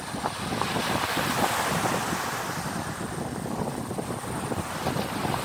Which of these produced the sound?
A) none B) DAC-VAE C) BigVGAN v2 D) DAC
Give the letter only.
A